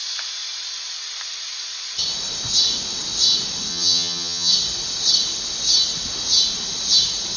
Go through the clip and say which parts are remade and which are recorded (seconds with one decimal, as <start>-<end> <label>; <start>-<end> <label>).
0.0-3.7 recorded; 3.7-4.5 remade; 4.5-7.4 recorded